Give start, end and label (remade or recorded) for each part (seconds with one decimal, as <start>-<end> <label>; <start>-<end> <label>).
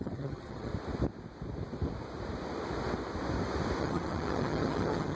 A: 0.0-0.7 remade; 0.7-3.8 recorded; 3.8-5.2 remade